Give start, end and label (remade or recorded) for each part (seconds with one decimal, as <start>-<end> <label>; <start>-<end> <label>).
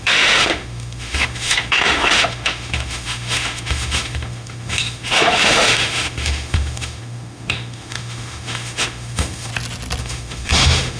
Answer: 0.0-9.5 remade; 9.5-10.0 recorded; 10.0-11.0 remade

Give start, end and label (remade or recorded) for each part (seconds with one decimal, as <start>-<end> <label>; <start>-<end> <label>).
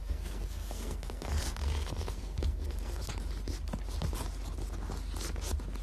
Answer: 0.0-3.0 remade; 3.0-5.8 recorded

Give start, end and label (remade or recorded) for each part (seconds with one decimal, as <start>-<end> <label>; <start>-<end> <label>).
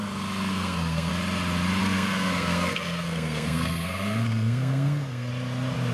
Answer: 0.0-0.5 recorded; 0.5-1.1 remade; 1.1-1.8 recorded; 1.8-5.3 remade; 5.3-5.9 recorded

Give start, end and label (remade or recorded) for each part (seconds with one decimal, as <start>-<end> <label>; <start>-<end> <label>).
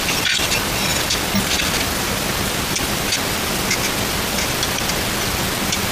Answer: 0.0-5.9 recorded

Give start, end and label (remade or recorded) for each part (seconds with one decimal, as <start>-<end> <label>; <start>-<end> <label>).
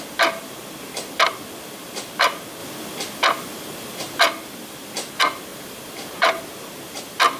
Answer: 0.0-5.5 recorded; 5.5-6.4 remade; 6.4-7.4 recorded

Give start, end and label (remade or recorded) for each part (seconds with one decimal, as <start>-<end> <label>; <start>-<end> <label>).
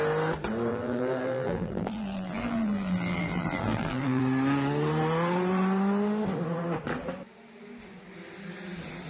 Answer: 0.0-0.7 recorded; 0.7-4.2 remade; 4.2-9.1 recorded